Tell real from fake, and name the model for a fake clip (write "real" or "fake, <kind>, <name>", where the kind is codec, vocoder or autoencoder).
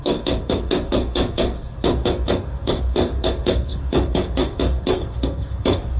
fake, codec, SNAC